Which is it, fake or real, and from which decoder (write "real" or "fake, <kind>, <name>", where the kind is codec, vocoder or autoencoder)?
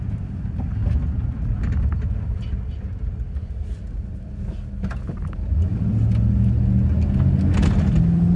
real